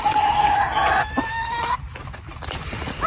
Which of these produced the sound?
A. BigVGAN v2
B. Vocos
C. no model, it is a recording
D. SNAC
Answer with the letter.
C